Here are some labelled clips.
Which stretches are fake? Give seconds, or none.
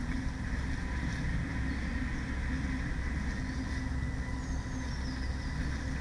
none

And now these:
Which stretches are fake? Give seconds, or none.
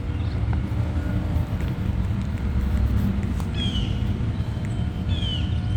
1.1-4.6 (vocoder, BigVGAN v2)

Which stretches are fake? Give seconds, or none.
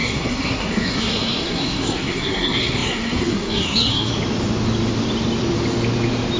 0.0-4.1 (codec, SNAC)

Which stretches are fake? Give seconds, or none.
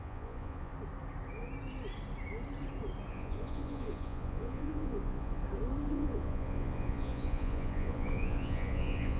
0.0-0.7 (vocoder, Vocos); 3.1-5.4; 5.9-9.2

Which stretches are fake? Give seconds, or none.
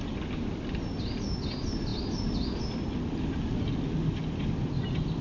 none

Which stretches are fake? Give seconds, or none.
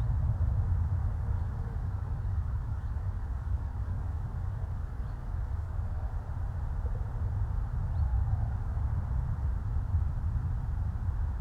1.0-6.1 (codec, DAC); 8.1-8.8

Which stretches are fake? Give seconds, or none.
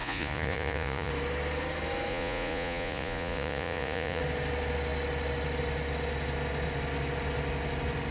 0.0-1.1 (vocoder, Vocos); 2.1-4.2